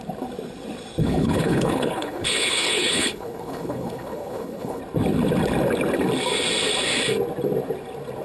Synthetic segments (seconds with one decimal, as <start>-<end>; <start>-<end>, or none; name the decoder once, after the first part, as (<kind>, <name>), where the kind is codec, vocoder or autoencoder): 1.0-4.8 (codec, HILCodec)